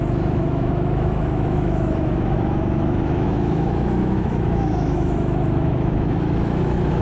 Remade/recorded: remade